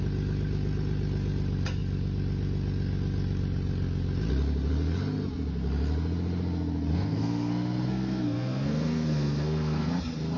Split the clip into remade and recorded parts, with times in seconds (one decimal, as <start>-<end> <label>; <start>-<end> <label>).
0.0-6.9 recorded; 6.9-9.9 remade; 9.9-10.4 recorded